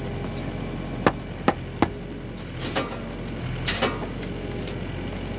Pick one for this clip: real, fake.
real